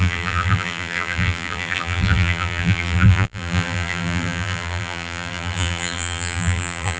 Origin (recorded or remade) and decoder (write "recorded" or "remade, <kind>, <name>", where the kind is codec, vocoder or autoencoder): remade, vocoder, BigVGAN v2